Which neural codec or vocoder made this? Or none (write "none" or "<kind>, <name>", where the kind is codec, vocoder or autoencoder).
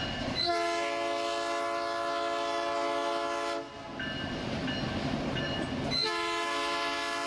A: none